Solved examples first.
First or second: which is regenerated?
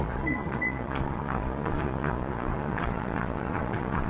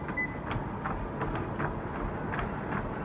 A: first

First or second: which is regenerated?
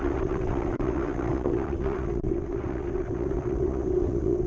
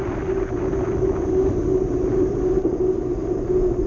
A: first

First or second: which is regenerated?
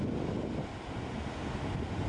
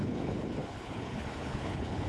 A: second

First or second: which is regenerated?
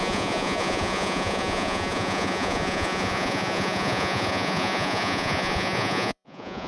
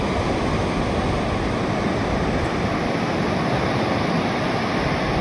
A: first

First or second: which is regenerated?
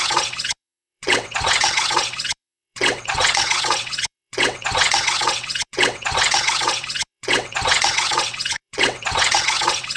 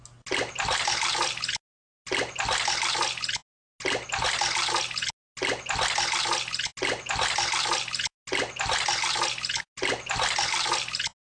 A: first